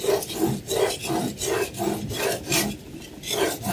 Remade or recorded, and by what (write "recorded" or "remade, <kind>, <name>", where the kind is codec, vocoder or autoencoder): remade, vocoder, BigVGAN v2